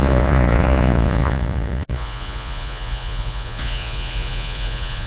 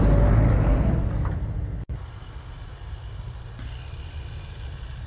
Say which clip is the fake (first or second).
first